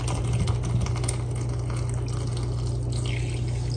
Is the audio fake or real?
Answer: real